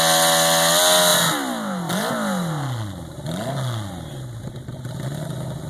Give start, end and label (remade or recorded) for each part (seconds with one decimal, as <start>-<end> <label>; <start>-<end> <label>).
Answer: 0.0-5.7 recorded